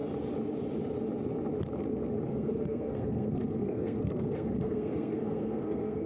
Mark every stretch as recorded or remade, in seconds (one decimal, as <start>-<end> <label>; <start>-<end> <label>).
0.0-2.3 recorded; 2.3-6.1 remade